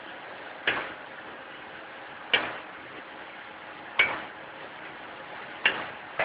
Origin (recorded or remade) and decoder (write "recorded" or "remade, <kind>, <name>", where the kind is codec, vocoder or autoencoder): recorded